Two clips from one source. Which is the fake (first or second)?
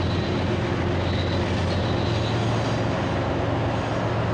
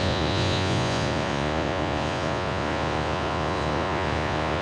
second